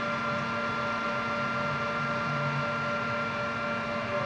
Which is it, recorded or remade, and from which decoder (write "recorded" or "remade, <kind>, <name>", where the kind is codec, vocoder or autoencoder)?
recorded